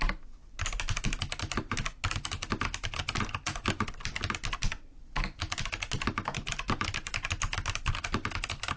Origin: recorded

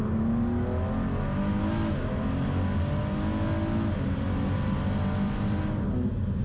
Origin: recorded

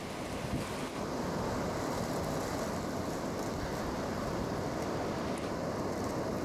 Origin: recorded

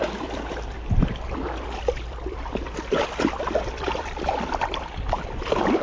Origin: remade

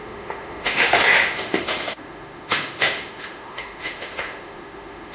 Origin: remade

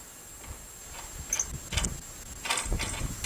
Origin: recorded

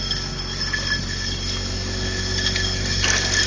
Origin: recorded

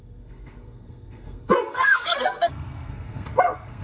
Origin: remade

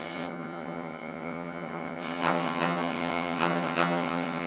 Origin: remade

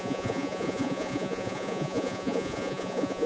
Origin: remade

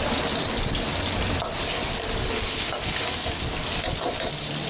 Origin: recorded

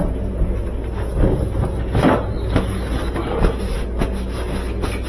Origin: recorded